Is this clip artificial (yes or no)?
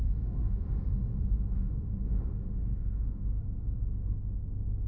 yes